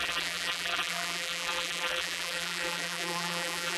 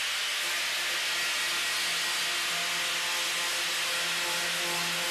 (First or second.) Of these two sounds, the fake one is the first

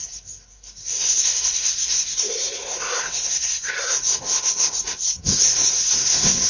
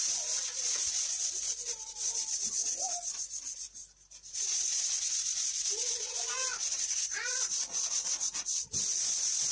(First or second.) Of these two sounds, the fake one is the first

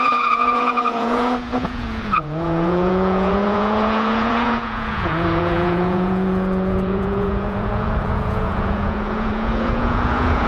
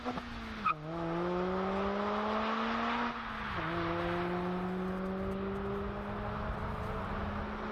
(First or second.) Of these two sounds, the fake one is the first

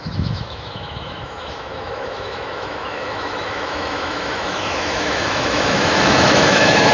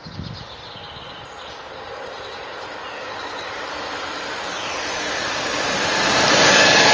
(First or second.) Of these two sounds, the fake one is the first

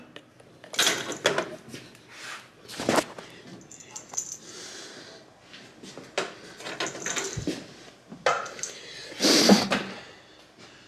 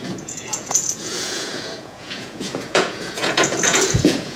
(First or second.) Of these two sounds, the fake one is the second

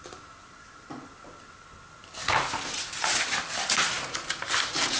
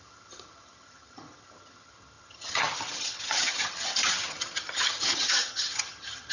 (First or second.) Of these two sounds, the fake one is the second